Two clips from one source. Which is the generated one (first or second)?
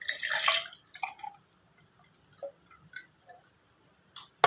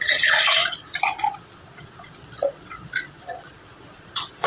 second